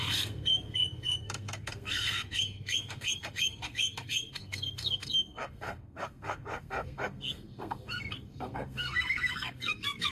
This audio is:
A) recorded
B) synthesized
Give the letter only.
B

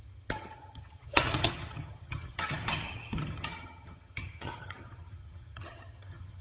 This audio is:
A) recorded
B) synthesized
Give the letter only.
B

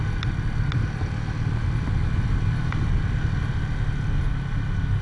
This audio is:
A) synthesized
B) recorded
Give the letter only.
B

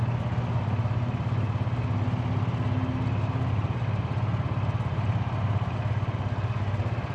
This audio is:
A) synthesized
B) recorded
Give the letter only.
B